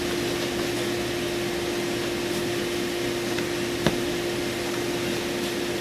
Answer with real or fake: real